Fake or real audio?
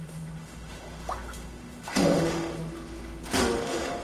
fake